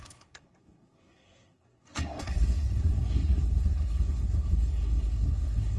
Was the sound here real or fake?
fake